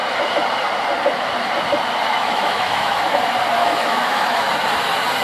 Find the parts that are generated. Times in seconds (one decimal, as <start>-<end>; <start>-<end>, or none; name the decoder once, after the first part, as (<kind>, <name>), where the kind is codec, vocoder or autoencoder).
2.1-3.2 (autoencoder, DAC-VAE); 3.6-4.5